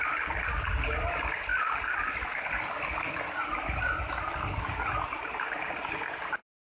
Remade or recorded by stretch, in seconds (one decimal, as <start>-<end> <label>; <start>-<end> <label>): 0.0-6.6 recorded